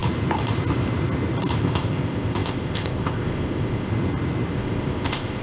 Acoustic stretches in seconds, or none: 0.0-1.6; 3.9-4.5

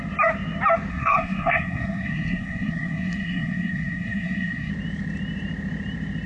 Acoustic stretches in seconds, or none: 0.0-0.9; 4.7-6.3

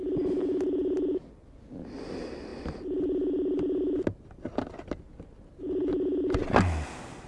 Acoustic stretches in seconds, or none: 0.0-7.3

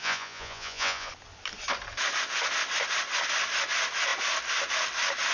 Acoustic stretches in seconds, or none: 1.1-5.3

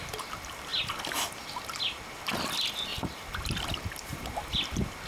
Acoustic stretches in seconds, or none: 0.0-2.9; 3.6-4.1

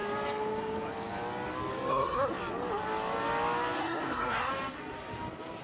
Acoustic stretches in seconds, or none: 0.0-1.9; 2.3-3.8; 4.5-5.6